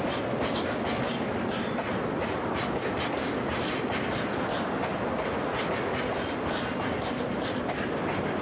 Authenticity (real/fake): real